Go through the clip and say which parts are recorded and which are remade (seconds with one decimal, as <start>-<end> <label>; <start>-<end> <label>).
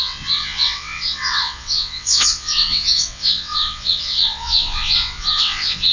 0.0-5.9 remade